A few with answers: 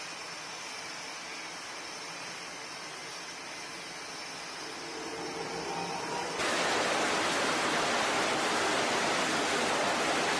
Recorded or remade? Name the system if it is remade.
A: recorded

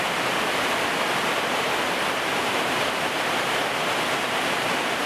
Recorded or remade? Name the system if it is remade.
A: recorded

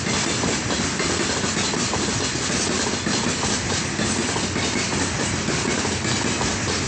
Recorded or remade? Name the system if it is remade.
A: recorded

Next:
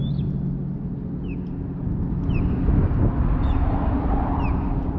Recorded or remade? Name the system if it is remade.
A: recorded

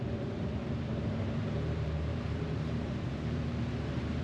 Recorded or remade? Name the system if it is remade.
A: remade, vocoder, BigVGAN v2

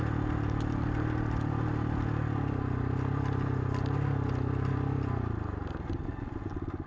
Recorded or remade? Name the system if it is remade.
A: recorded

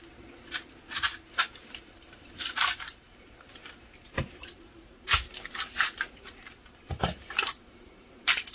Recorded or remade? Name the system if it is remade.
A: remade, vocoder, BigVGAN v2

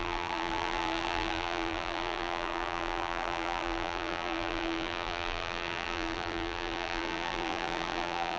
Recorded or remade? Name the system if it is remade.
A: remade, vocoder, BigVGAN v2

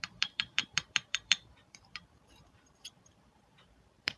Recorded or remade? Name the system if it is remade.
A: remade, vocoder, BigVGAN v2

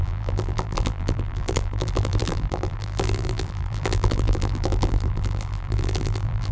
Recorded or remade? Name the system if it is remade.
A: remade, vocoder, BigVGAN v2